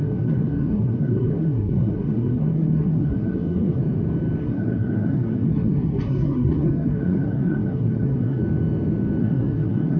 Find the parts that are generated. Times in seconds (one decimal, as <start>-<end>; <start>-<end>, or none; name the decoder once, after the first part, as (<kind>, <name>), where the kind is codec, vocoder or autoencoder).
0.0-3.8 (codec, SNAC); 4.4-8.4; 9.2-10.0